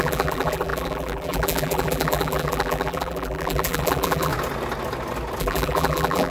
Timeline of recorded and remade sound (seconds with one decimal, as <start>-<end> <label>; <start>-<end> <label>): 0.0-4.3 remade; 4.3-5.4 recorded; 5.4-6.3 remade